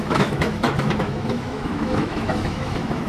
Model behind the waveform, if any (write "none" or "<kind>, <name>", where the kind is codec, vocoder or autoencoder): autoencoder, DAC-VAE